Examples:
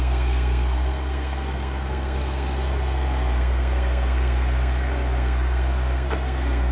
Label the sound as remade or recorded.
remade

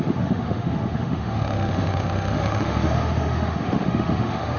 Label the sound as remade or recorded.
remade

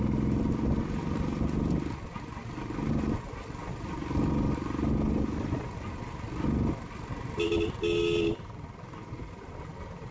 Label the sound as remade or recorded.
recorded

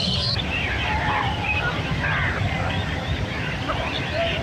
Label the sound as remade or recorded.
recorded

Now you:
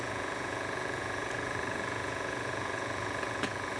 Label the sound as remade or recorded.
remade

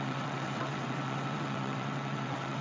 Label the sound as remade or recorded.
remade